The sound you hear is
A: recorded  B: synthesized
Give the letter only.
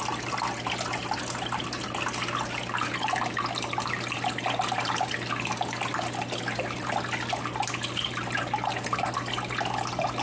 A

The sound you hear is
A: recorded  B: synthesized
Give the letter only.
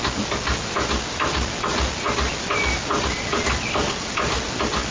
A